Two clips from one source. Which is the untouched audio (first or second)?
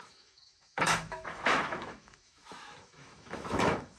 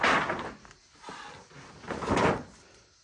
second